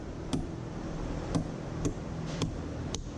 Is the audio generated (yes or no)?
yes